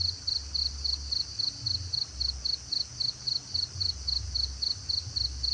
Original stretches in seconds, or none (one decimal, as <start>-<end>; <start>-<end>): 0.0-5.5